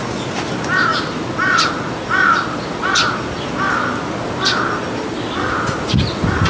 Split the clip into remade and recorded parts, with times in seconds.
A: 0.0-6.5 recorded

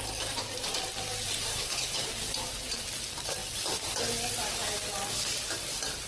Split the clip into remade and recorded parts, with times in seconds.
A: 0.0-1.5 recorded; 1.5-2.1 remade; 2.1-6.1 recorded

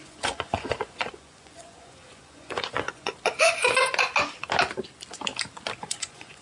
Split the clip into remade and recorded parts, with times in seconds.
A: 0.0-3.6 remade; 3.6-5.8 recorded; 5.8-6.4 remade

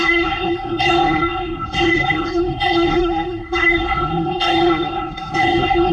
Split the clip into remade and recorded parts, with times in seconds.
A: 0.0-5.9 remade

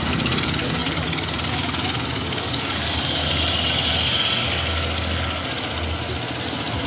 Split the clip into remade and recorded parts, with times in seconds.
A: 0.0-3.2 remade; 3.2-4.7 recorded; 4.7-5.4 remade; 5.4-6.9 recorded

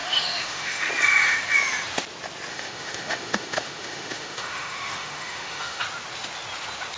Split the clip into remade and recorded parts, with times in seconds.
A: 0.0-0.9 remade; 0.9-2.5 recorded; 2.5-5.8 remade; 5.8-7.0 recorded